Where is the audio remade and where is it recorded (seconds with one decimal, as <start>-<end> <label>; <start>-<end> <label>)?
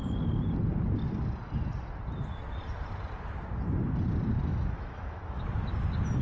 0.0-4.5 recorded; 4.5-5.4 remade; 5.4-6.2 recorded